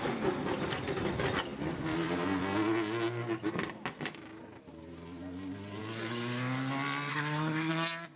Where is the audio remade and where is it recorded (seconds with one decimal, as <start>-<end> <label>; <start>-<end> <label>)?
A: 0.0-7.1 recorded; 7.1-7.7 remade; 7.7-8.2 recorded